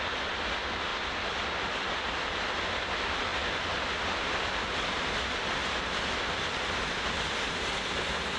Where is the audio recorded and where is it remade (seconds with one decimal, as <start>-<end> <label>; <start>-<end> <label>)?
0.0-8.4 recorded